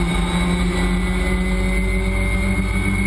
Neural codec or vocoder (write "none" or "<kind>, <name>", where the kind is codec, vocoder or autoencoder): none